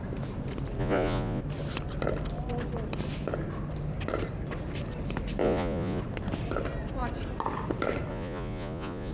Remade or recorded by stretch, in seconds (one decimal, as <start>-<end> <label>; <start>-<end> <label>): 0.0-0.8 recorded; 0.8-1.4 remade; 1.4-5.4 recorded; 5.4-6.0 remade; 6.0-8.1 recorded; 8.1-9.1 remade